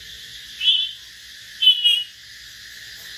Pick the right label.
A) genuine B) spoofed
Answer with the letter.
A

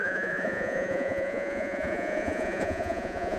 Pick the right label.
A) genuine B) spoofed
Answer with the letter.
B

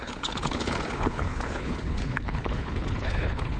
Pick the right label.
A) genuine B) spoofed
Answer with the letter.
B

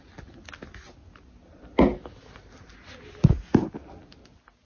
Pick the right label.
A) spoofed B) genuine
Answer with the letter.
B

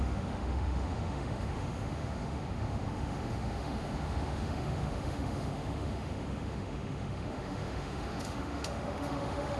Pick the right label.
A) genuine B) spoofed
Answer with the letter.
B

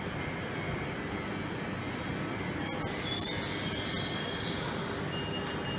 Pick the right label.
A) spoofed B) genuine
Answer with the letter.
B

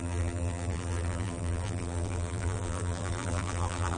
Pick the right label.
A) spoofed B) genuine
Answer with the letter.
A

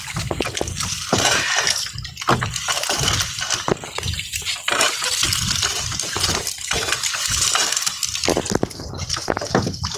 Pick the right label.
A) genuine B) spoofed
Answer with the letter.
A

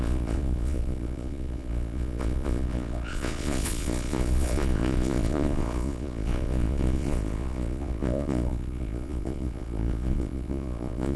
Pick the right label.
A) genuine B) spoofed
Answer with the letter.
B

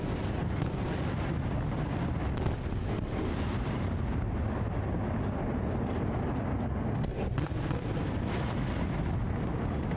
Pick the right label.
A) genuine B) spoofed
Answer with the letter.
A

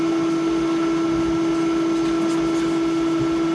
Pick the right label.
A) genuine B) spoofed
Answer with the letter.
A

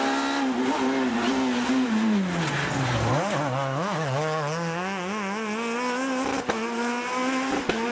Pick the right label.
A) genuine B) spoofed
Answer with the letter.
A